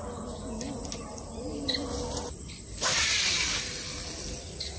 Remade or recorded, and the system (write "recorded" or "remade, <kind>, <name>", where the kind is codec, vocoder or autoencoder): recorded